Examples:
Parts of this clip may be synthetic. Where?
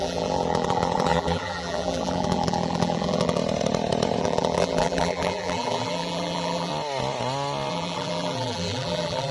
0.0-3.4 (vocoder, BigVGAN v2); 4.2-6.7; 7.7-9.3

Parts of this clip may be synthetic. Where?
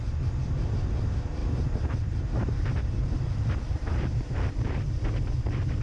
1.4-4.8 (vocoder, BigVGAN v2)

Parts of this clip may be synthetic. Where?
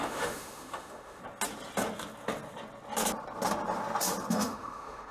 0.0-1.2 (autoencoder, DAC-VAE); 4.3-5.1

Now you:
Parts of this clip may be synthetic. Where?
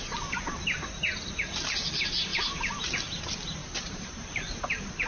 2.3-2.9 (vocoder, BigVGAN v2); 3.6-5.1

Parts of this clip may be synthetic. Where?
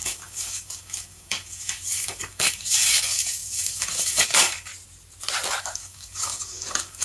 0.0-4.7 (codec, DAC); 5.6-7.0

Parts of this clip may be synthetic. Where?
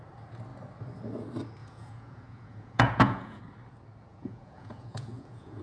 1.6-3.4 (vocoder, Vocos); 4.1-5.6